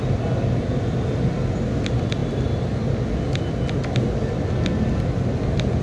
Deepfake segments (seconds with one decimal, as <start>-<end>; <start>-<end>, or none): none